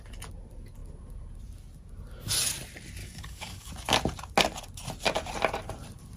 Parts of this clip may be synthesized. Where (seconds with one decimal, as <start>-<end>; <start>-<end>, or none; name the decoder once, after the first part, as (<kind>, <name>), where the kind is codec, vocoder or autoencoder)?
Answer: 3.0-3.7 (codec, DAC)